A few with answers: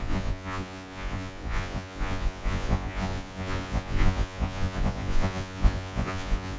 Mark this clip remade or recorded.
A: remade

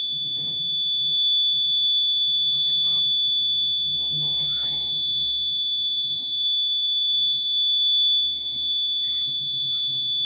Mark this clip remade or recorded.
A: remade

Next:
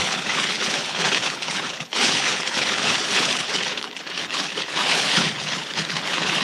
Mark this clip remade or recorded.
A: remade